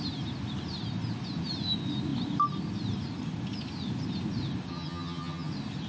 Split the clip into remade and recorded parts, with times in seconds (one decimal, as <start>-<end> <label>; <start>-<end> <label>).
0.0-4.7 recorded; 4.7-5.5 remade; 5.5-5.9 recorded